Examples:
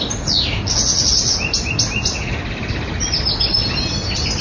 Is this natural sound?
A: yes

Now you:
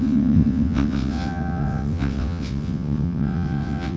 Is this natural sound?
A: no